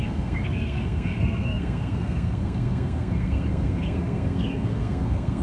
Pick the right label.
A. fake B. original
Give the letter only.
A